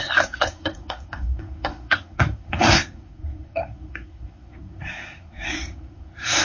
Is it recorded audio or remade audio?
remade